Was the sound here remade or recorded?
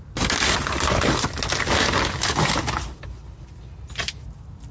recorded